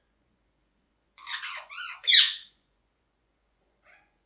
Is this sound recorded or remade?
remade